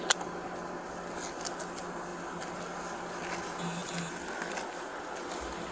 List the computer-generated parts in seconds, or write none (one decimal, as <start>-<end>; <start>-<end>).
none